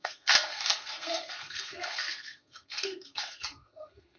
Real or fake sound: fake